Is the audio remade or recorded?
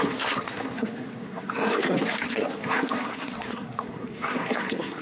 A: remade